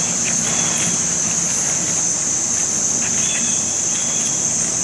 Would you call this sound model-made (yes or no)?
no